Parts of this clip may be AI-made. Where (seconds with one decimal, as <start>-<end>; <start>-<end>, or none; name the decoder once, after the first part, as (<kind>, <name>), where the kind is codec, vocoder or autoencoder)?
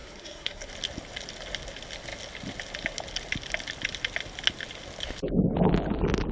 0.0-0.7 (codec, SNAC)